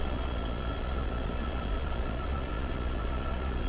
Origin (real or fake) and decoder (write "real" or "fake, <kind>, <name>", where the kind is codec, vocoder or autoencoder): fake, vocoder, Vocos